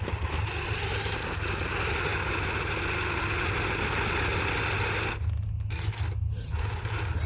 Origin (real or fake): real